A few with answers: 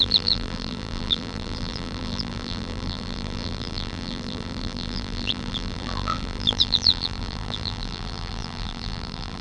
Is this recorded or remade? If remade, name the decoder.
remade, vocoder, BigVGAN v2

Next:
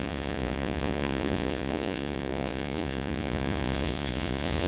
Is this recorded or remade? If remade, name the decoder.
remade, vocoder, Vocos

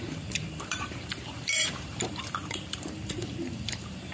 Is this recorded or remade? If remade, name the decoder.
remade, vocoder, BigVGAN v2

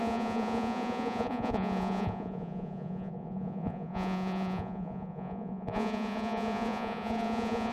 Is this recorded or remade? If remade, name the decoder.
remade, vocoder, Vocos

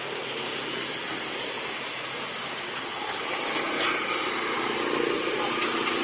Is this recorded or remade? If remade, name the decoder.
recorded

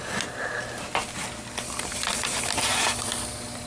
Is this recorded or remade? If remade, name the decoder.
recorded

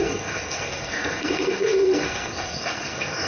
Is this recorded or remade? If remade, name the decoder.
remade, codec, SNAC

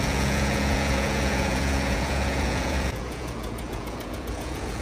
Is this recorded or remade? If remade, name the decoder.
remade, vocoder, Vocos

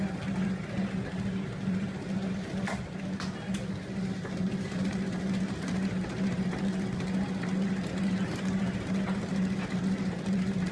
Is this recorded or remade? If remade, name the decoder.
recorded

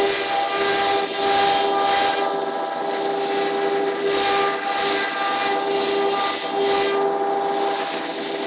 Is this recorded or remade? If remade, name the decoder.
recorded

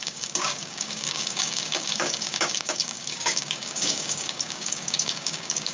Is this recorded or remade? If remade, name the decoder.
remade, codec, DAC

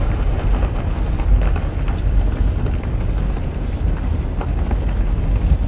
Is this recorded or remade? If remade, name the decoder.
recorded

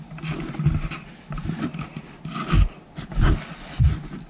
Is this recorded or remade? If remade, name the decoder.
recorded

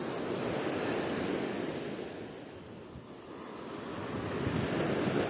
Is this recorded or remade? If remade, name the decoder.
recorded